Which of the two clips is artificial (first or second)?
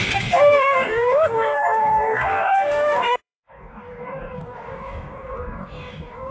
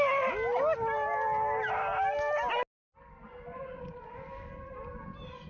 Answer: first